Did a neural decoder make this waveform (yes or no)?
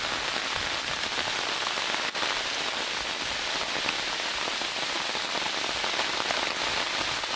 no